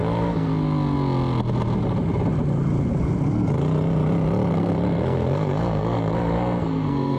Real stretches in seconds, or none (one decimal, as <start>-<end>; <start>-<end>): 0.5-4.5